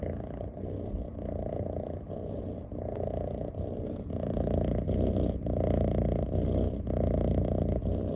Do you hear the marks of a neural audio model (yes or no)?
no